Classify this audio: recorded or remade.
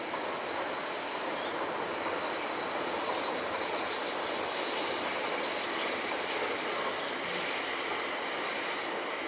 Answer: recorded